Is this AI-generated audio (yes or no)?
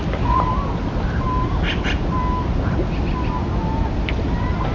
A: no